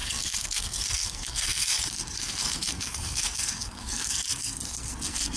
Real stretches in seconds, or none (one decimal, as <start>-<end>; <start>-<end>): none